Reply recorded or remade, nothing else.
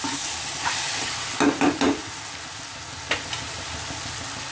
recorded